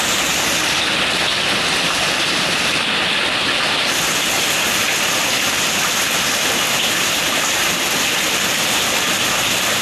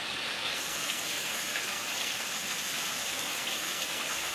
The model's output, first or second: second